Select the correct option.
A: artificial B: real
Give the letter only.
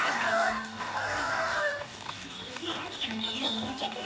A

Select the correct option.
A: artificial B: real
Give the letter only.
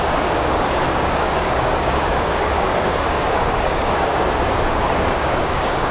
A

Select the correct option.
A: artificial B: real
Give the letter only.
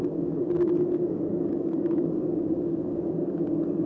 A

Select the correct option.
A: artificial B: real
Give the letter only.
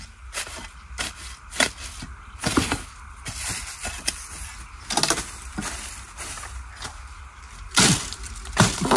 B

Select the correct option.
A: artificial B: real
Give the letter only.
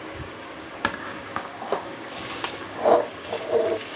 A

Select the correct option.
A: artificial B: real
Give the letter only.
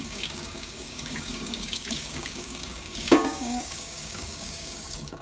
A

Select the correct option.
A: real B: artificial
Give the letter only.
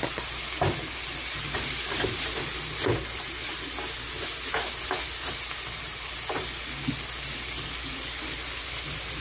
A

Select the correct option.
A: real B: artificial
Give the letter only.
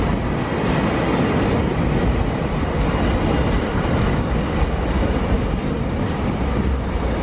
A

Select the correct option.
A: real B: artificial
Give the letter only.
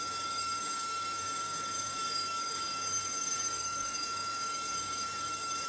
B